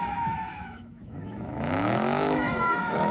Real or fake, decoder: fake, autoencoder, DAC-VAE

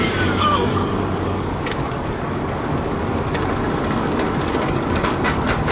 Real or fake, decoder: fake, codec, DAC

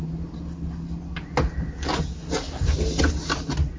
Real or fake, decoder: real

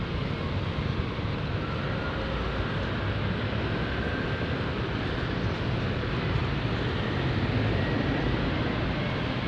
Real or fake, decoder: real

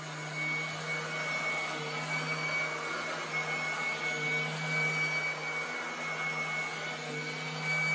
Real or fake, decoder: real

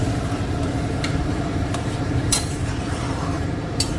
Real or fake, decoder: fake, vocoder, BigVGAN v2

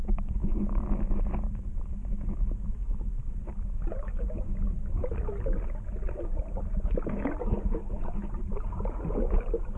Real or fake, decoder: real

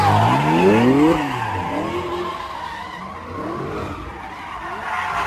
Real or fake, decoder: real